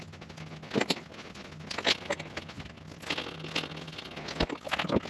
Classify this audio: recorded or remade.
recorded